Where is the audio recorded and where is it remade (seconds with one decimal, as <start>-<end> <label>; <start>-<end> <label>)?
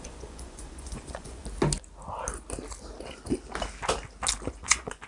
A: 0.0-1.4 remade; 1.4-4.5 recorded; 4.5-5.1 remade